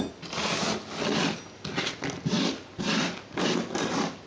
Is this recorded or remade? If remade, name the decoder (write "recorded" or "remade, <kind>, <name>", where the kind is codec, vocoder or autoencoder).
recorded